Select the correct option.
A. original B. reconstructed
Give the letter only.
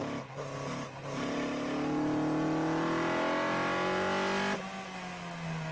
A